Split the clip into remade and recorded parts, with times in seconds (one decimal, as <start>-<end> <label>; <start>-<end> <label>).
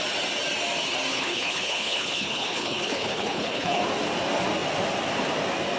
0.0-1.1 recorded; 1.1-3.8 remade; 3.8-5.8 recorded